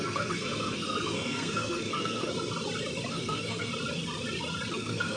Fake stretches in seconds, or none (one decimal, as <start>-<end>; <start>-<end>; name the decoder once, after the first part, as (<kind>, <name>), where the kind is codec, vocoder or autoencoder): 0.0-2.3 (codec, SNAC); 3.1-3.7; 4.7-5.2